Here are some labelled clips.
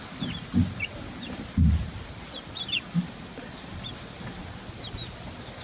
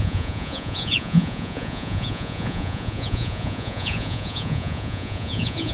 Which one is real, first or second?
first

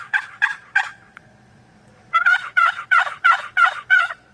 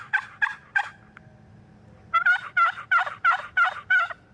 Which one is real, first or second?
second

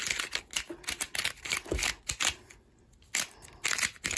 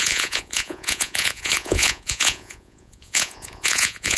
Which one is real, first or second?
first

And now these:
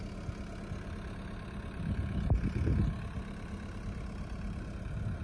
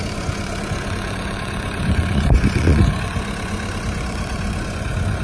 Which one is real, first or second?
first